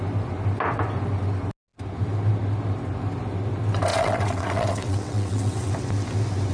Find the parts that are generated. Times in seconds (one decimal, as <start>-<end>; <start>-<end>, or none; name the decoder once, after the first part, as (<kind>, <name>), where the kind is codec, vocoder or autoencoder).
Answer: 3.9-5.7 (vocoder, WaveNeXt)